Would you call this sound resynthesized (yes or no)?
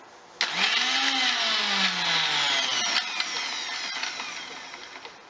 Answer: no